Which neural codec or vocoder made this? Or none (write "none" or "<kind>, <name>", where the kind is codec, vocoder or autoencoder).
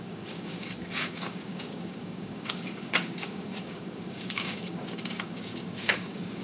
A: codec, DAC